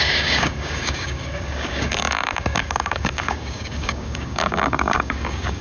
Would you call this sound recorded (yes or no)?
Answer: no